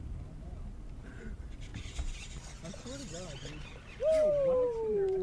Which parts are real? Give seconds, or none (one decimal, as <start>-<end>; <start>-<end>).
1.7-4.3